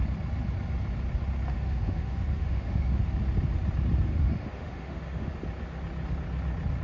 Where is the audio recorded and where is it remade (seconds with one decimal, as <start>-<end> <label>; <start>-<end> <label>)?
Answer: 0.0-1.5 recorded; 1.5-3.1 remade; 3.1-4.1 recorded; 4.1-5.3 remade; 5.3-6.8 recorded